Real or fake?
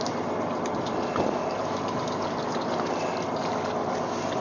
real